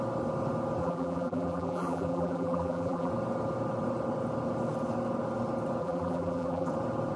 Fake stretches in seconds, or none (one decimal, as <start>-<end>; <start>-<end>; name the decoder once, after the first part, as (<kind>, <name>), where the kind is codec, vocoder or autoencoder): 0.8-3.1 (vocoder, BigVGAN v2); 5.8-6.7